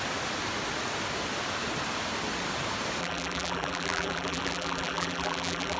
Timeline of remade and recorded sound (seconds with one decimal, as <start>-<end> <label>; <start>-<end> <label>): 0.0-3.0 recorded; 3.0-5.8 remade